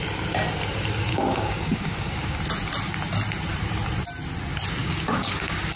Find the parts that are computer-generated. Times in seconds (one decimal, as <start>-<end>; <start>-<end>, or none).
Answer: 1.1-2.4; 4.8-5.8